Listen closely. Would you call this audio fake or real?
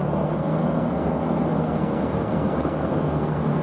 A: fake